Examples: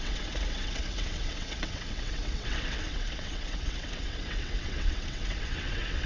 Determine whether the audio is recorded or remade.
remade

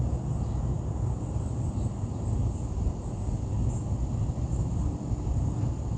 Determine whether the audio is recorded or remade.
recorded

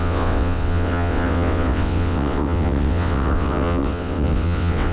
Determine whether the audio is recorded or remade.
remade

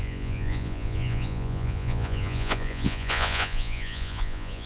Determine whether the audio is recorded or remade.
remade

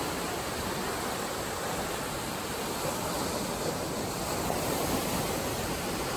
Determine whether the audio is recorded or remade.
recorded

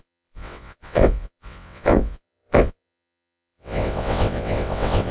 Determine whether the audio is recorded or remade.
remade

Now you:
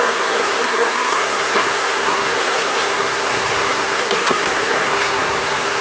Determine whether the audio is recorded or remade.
remade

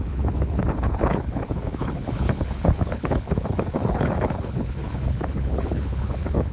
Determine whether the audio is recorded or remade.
remade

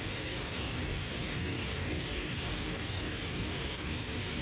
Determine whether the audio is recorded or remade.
remade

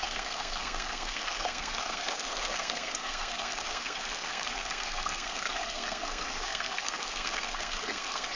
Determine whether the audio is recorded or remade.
remade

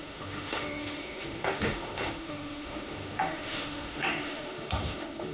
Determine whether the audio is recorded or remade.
remade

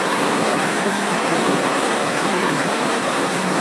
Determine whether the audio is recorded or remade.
remade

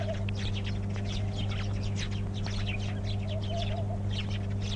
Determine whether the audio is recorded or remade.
recorded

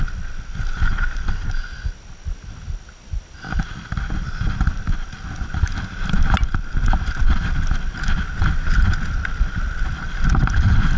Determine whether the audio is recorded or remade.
recorded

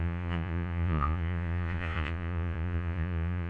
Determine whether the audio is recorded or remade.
remade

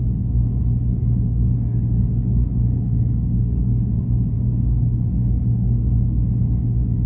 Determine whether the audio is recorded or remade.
recorded